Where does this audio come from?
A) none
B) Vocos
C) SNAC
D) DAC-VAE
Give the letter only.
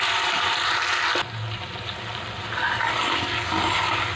A